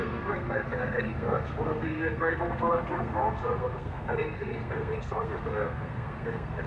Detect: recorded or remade remade